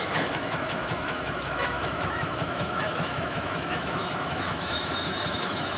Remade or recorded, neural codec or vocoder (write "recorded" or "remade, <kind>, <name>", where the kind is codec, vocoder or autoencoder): remade, autoencoder, DAC-VAE